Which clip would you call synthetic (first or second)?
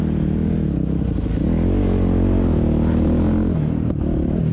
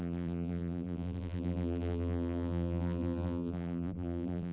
second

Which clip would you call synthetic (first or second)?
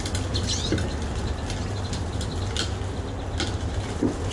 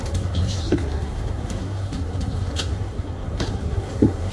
second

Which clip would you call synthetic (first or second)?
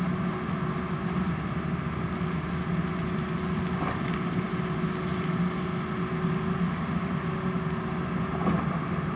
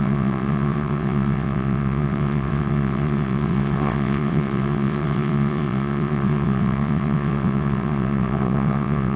second